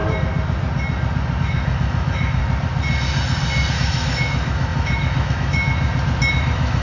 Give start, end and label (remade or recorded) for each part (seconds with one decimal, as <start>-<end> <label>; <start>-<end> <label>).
0.0-1.4 recorded; 1.4-2.4 remade; 2.4-3.7 recorded; 3.7-5.7 remade; 5.7-6.3 recorded; 6.3-6.8 remade